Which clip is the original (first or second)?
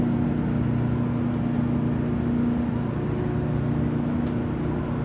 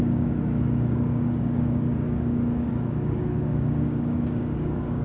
first